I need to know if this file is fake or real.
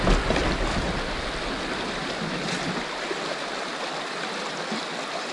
real